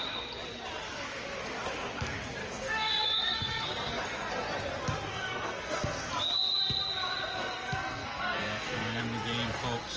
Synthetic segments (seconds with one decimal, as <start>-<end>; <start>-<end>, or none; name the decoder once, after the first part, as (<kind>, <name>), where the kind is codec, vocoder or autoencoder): 2.4-4.0 (codec, SNAC); 5.1-6.1; 7.4-9.0

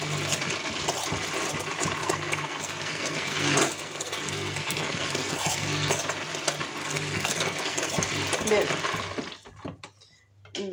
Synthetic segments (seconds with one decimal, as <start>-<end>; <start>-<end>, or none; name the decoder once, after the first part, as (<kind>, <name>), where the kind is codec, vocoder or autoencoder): 2.0-6.0 (codec, SNAC); 6.8-7.9

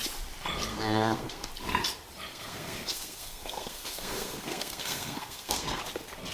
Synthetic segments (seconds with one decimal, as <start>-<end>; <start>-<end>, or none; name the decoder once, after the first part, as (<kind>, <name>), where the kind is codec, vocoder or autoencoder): 0.7-1.5 (codec, SNAC); 2.3-5.8

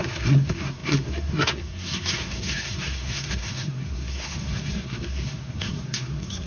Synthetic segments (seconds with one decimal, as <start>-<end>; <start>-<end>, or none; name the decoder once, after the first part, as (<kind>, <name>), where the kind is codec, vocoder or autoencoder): 0.0-6.5 (codec, SNAC)